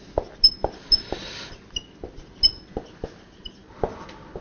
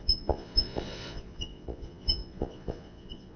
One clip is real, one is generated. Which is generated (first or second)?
second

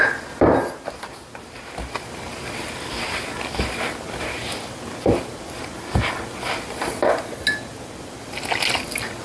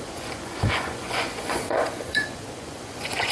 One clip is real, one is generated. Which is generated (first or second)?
second